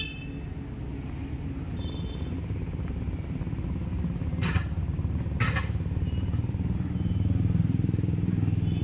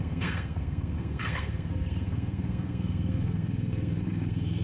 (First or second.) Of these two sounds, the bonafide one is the first